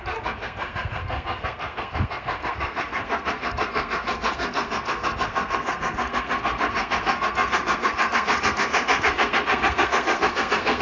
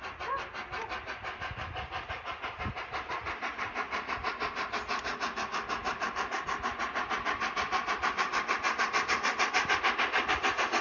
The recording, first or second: second